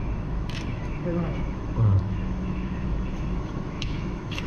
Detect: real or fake fake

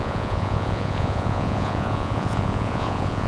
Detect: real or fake fake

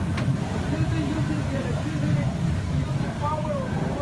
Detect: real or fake real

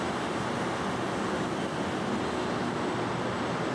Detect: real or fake real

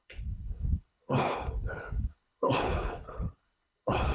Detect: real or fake fake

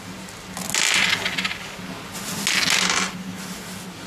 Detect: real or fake real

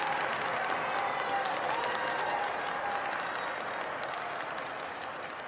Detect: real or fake real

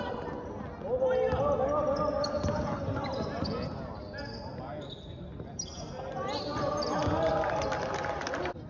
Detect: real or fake real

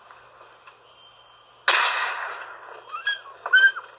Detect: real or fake real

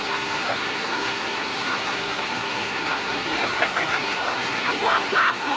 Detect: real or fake fake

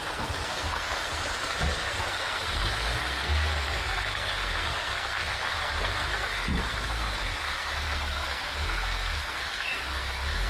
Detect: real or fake fake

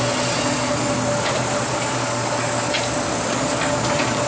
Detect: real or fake real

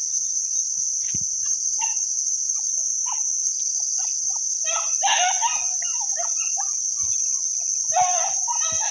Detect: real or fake fake